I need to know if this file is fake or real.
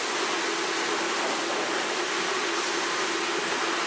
real